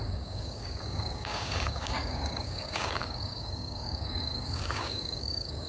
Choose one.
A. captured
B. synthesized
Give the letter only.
B